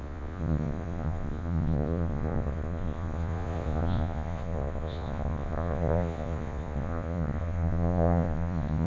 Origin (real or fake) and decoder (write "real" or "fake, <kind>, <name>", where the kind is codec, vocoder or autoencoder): fake, vocoder, Vocos